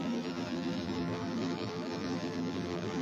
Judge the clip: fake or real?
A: fake